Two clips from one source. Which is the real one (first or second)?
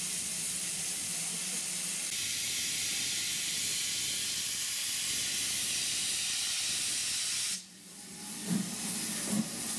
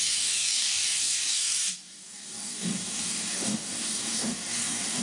first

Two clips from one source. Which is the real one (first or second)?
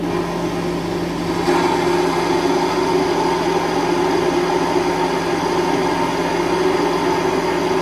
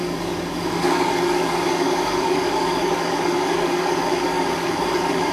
first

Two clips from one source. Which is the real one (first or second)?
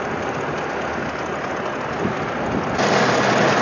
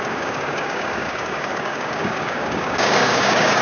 first